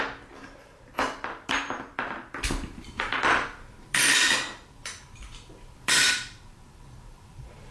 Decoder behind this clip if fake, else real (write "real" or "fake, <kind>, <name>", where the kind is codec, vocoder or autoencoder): fake, vocoder, BigVGAN v2